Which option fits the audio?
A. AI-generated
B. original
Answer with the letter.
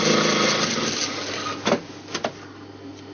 B